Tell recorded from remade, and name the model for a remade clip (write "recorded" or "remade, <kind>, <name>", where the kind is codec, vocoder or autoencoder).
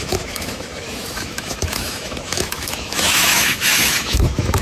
remade, autoencoder, DAC-VAE